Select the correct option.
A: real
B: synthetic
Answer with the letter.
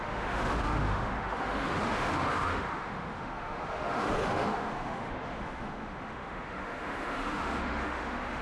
B